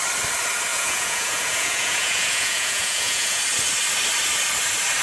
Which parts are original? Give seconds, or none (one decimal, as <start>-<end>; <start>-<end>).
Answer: 0.0-0.7; 3.4-5.0